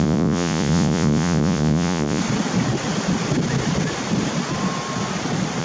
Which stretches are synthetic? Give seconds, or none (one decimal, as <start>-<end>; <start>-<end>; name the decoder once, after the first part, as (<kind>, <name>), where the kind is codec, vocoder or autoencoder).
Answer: 0.0-2.2 (vocoder, Vocos)